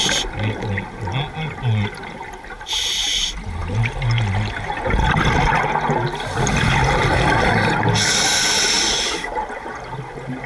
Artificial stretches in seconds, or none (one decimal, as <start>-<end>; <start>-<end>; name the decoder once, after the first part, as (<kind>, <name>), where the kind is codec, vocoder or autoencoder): 8.3-9.7 (vocoder, BigVGAN v2)